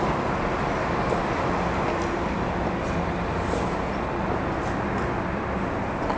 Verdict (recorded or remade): recorded